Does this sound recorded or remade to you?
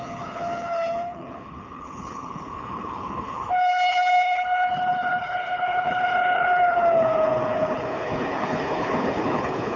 remade